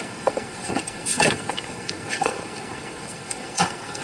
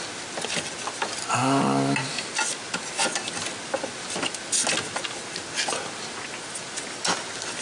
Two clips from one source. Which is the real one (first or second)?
second